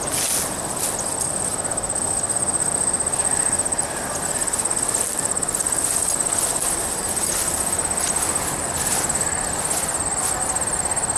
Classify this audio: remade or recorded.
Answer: recorded